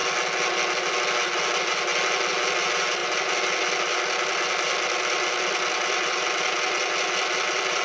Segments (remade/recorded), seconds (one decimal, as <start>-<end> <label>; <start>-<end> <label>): 0.0-7.8 recorded